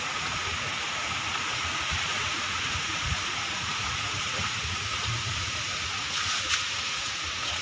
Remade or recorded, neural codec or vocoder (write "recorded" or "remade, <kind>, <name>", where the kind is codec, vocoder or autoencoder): remade, vocoder, Vocos